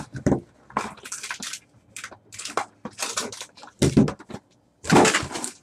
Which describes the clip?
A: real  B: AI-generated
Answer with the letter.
A